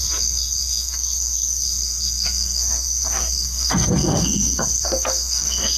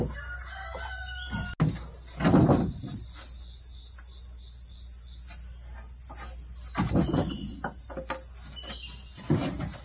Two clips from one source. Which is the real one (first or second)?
second